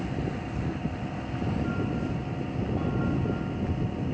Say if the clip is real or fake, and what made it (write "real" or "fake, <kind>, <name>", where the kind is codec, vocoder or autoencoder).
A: real